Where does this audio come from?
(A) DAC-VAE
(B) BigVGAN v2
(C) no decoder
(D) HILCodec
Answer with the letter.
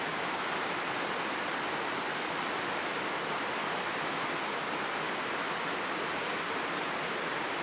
C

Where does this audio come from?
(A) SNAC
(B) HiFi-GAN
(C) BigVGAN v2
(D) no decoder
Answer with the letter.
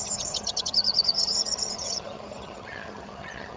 B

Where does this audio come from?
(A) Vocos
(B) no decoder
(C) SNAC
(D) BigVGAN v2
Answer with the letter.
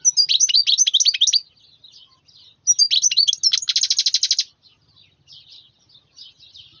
B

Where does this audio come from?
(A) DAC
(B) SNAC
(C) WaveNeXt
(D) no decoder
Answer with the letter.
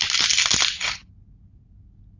D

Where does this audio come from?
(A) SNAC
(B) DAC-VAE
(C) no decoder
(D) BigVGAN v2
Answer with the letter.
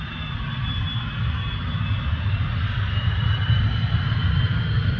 C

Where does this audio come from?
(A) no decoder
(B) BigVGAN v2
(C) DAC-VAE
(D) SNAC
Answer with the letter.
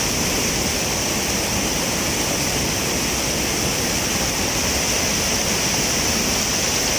A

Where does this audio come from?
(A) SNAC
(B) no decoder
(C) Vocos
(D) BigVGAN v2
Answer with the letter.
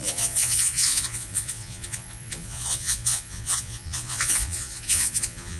C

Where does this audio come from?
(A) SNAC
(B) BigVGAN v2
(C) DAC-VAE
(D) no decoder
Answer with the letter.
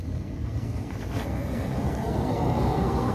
A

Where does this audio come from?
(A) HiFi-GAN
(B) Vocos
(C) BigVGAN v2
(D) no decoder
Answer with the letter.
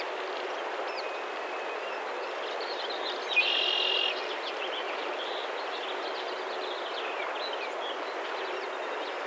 C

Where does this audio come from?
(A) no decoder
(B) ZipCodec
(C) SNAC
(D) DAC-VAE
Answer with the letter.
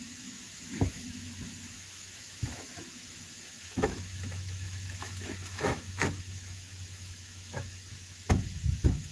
D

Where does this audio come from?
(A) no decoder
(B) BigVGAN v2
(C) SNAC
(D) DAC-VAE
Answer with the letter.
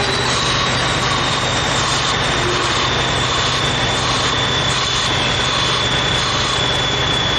A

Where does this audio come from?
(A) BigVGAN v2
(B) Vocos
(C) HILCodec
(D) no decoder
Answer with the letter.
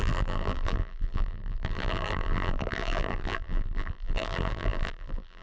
A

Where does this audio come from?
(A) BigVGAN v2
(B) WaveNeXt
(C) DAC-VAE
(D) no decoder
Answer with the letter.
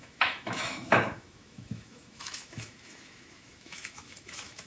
C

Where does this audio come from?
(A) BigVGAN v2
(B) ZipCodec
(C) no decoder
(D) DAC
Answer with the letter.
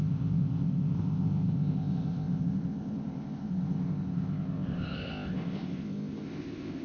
B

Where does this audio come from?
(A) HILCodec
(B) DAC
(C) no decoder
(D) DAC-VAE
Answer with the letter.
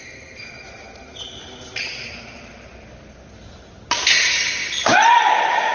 C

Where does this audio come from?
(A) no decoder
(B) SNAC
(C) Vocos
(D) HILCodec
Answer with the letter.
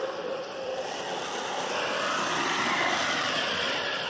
A